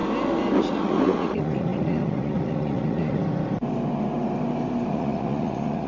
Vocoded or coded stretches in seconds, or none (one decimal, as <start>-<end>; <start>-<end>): 0.6-3.2; 4.9-5.9